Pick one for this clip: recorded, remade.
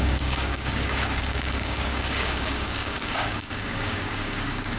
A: remade